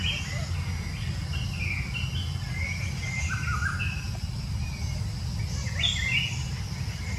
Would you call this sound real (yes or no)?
yes